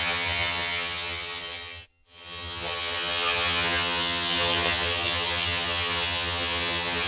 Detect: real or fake fake